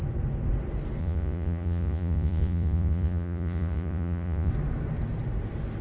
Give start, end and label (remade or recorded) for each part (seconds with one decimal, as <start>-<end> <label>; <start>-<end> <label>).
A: 0.0-1.0 recorded; 1.0-4.5 remade; 4.5-5.8 recorded